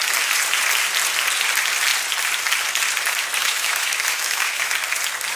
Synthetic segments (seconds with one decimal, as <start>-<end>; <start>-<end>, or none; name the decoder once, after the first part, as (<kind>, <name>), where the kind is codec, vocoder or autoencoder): 3.4-4.7 (autoencoder, DAC-VAE)